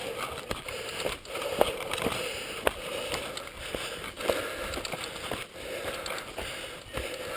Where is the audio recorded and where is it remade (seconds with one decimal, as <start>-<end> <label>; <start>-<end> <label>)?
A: 0.0-7.4 recorded

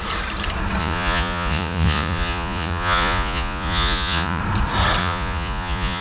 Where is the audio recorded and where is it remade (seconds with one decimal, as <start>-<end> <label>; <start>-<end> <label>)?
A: 0.0-0.8 recorded; 0.8-4.4 remade; 4.4-5.0 recorded; 5.0-6.0 remade

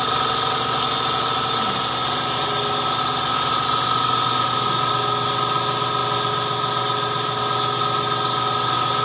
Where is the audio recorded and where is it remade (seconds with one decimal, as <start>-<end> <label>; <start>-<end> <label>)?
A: 0.0-9.0 recorded

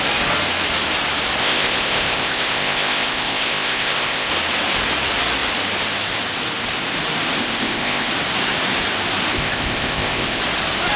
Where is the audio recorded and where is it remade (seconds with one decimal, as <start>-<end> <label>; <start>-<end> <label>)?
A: 0.0-1.4 recorded; 1.4-4.3 remade; 4.3-7.4 recorded; 7.4-8.1 remade; 8.1-9.3 recorded; 9.3-10.4 remade; 10.4-11.0 recorded

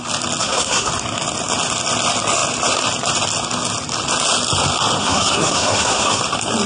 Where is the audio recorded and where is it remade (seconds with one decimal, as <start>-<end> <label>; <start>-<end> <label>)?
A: 0.0-0.4 recorded; 0.4-0.9 remade; 0.9-5.0 recorded; 5.0-6.2 remade; 6.2-6.7 recorded

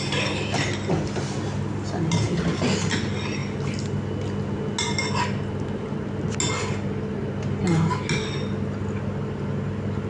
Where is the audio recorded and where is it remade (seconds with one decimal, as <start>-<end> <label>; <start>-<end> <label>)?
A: 0.0-10.1 recorded